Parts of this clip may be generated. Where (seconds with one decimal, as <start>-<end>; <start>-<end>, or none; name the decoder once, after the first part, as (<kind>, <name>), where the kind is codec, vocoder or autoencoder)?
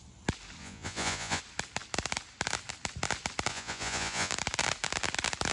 0.6-1.4 (vocoder, Vocos); 3.5-4.3